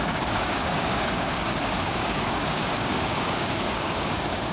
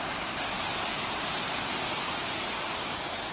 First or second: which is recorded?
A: second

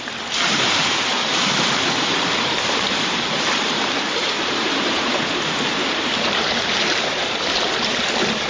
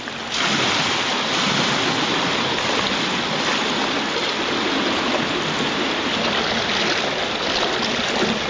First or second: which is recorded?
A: second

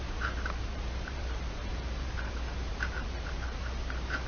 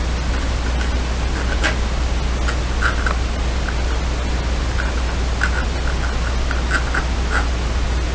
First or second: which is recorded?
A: second